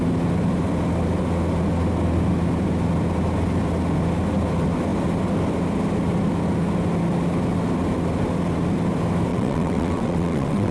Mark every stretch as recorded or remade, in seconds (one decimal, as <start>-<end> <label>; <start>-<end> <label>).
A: 0.0-9.3 recorded; 9.3-10.7 remade